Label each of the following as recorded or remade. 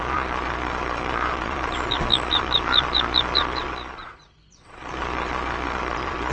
remade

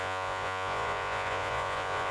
remade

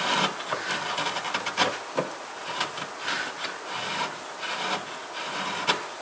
recorded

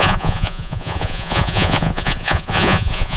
remade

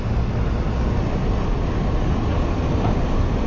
recorded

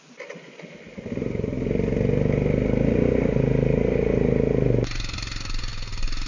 recorded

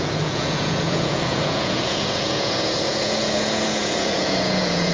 remade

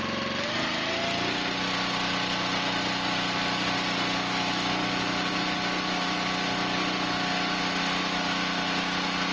recorded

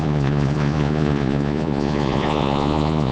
remade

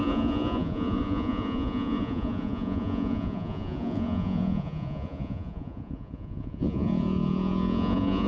remade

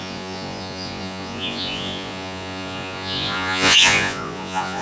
remade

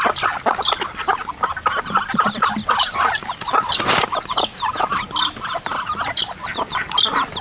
recorded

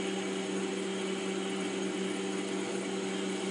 recorded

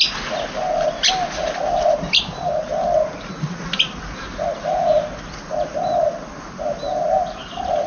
recorded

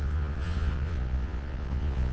remade